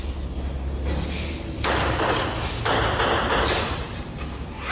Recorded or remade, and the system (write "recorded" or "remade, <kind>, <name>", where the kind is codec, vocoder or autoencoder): recorded